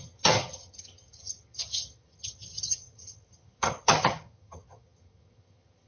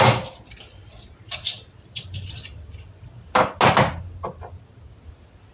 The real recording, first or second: second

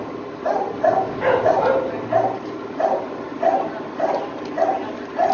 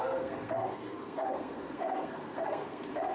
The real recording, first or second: first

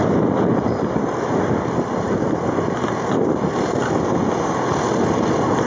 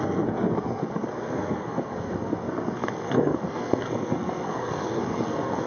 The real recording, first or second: first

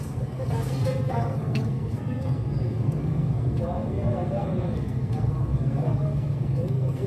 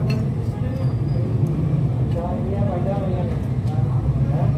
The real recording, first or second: second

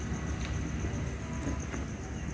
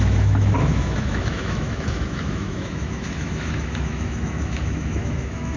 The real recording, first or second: first